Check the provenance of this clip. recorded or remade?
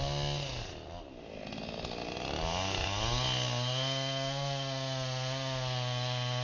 recorded